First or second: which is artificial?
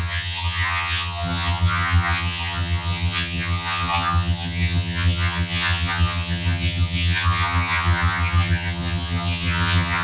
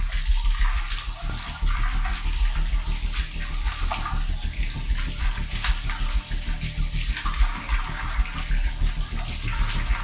first